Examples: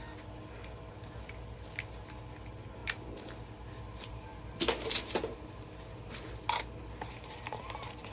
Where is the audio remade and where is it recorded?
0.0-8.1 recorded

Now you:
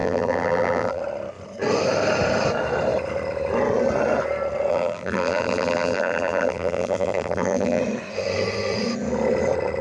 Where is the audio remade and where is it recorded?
0.0-1.0 remade; 1.0-4.7 recorded; 4.7-7.8 remade; 7.8-9.8 recorded

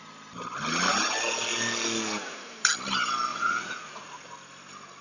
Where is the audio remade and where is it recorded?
0.0-3.3 recorded; 3.3-4.3 remade; 4.3-5.0 recorded

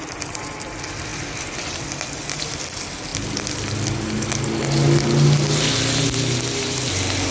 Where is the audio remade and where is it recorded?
0.0-7.3 recorded

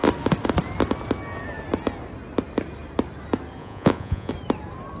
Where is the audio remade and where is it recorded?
0.0-3.6 recorded; 3.6-4.3 remade; 4.3-5.0 recorded

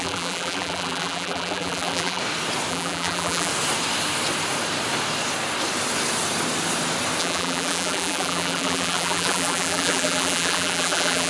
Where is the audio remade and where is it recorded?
0.0-2.2 remade; 2.2-2.7 recorded; 2.7-3.5 remade; 3.5-7.2 recorded; 7.2-11.3 remade

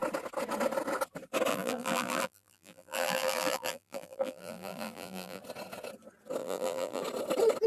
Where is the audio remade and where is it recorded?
0.0-1.5 recorded; 1.5-5.4 remade; 5.4-6.4 recorded; 6.4-7.0 remade; 7.0-7.7 recorded